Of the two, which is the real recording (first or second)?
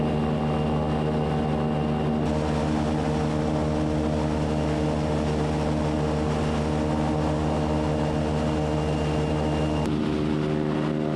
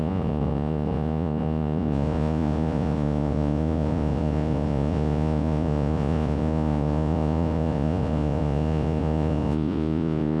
first